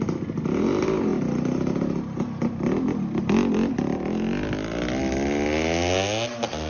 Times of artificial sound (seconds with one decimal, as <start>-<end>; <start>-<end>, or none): none

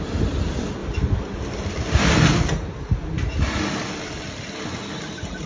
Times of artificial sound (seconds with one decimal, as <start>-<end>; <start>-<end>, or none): none

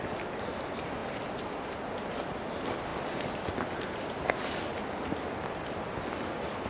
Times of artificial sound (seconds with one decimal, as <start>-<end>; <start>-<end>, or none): none

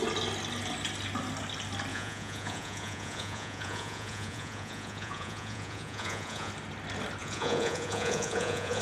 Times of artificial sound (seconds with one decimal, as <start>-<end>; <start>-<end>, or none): 1.9-6.5; 7.2-8.8

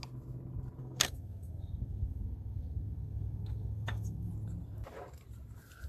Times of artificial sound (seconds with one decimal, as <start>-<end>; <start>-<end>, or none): 0.8-4.3

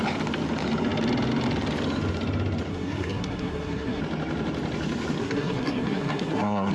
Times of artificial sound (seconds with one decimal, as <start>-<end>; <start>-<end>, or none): 2.7-4.0; 5.2-6.7

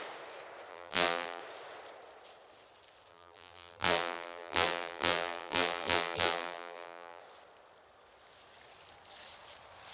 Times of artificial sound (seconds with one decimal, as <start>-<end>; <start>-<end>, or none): 0.7-1.4; 3.1-7.2